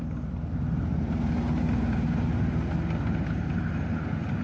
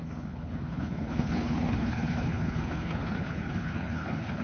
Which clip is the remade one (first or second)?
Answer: second